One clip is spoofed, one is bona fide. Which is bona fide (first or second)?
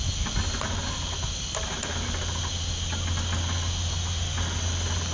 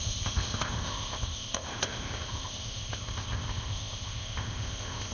first